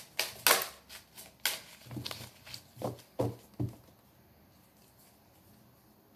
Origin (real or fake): real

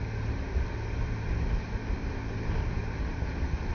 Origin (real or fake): real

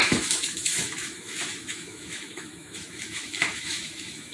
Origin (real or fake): fake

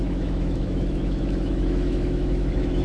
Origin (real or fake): fake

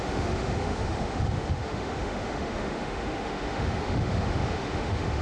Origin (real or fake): fake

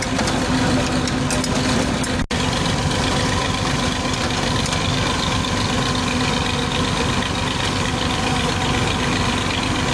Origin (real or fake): real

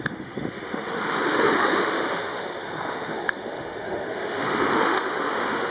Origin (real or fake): fake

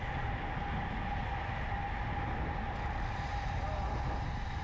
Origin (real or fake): real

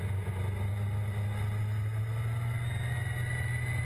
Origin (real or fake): real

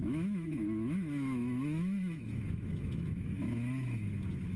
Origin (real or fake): fake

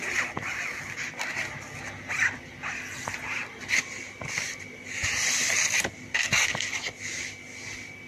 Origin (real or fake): real